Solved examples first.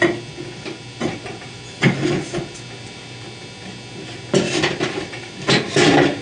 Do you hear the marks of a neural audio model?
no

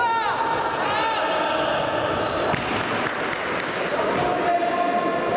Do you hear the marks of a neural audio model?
no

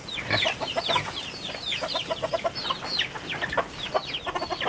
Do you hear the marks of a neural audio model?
no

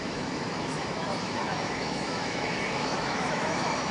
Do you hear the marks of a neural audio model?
yes